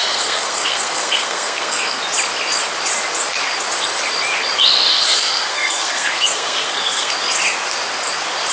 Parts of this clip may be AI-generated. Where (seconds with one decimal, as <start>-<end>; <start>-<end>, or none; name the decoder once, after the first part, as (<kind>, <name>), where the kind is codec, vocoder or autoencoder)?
0.0-2.0 (codec, SNAC); 4.9-7.1